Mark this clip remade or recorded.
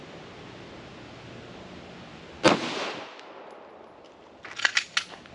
recorded